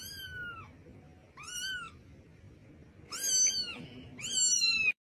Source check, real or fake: real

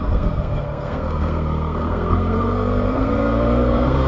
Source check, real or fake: fake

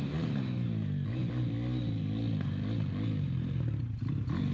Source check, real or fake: real